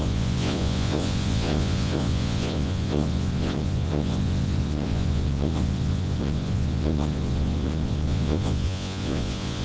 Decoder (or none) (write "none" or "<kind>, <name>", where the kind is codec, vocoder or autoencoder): vocoder, Vocos